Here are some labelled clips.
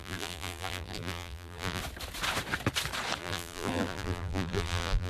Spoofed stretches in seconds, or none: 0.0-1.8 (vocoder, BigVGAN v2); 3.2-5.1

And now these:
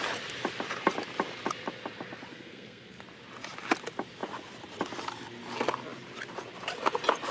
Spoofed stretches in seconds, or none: 2.3-3.0 (codec, SNAC)